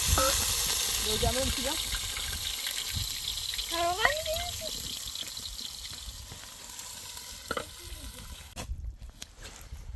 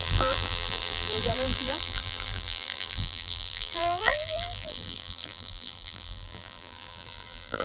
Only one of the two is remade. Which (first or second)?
second